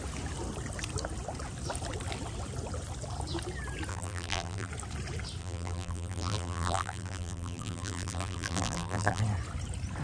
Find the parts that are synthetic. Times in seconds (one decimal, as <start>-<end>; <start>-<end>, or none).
3.9-4.7; 5.4-9.2